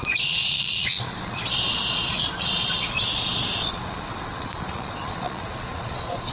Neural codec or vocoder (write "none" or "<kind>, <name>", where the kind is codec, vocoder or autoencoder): vocoder, Vocos